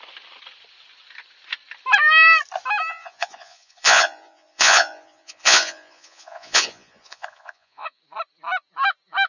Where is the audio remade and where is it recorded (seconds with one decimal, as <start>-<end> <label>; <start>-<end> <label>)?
0.0-2.9 recorded; 2.9-8.0 remade; 8.0-9.3 recorded

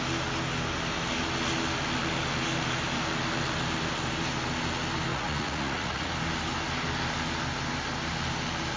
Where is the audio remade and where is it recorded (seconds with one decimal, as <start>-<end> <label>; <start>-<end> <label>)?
0.0-5.1 recorded; 5.1-6.1 remade; 6.1-8.8 recorded

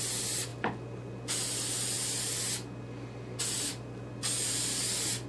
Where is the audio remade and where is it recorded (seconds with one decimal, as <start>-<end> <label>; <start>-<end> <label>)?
0.0-5.3 recorded

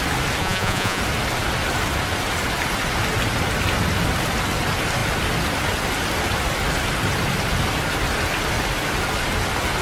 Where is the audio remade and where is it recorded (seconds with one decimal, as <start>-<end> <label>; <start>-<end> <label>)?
0.0-0.4 recorded; 0.4-1.0 remade; 1.0-9.8 recorded

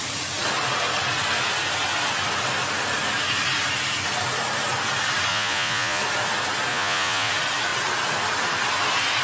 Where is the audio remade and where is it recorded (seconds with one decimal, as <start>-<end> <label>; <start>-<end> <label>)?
0.0-5.3 recorded; 5.3-6.0 remade; 6.0-6.7 recorded; 6.7-7.3 remade; 7.3-9.2 recorded

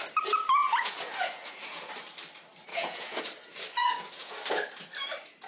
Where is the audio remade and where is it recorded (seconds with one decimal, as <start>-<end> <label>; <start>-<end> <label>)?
0.0-0.6 recorded; 0.6-1.9 remade; 1.9-2.7 recorded; 2.7-3.2 remade; 3.2-3.8 recorded; 3.8-4.3 remade; 4.3-5.5 recorded